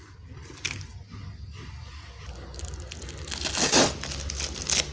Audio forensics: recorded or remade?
recorded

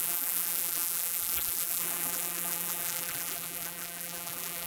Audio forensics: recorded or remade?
remade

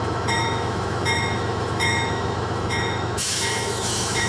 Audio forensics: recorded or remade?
remade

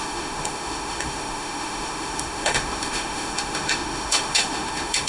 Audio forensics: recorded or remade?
remade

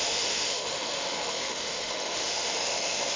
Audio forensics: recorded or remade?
remade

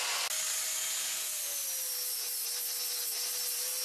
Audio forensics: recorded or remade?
recorded